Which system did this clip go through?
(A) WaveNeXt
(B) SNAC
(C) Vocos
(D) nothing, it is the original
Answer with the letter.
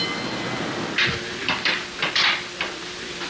D